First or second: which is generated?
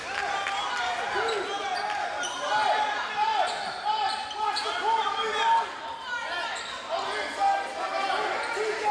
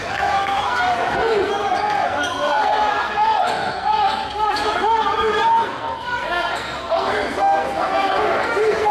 second